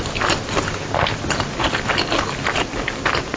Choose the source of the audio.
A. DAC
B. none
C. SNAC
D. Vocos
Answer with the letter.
B